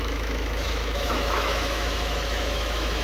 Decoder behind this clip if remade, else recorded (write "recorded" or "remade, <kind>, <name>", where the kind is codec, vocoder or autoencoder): remade, autoencoder, DAC-VAE